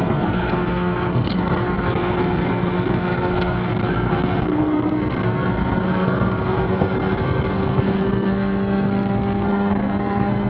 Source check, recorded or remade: remade